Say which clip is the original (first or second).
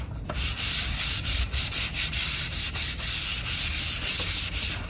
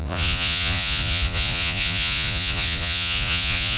first